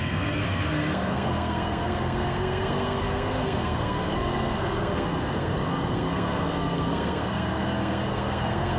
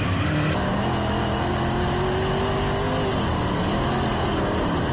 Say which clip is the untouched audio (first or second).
second